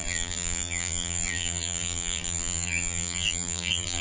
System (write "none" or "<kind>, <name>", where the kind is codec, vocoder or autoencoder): vocoder, BigVGAN v2